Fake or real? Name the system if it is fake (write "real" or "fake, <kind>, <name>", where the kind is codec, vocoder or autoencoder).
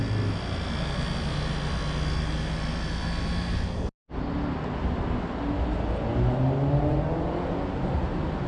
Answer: real